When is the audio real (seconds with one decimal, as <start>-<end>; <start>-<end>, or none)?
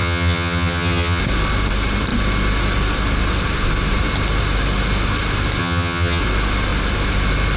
1.2-5.6; 6.2-7.6